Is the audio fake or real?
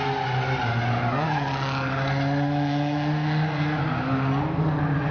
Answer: real